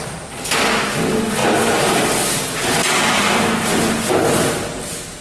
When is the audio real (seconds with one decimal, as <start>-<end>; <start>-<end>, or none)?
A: 0.0-5.2